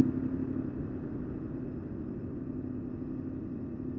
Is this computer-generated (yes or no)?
no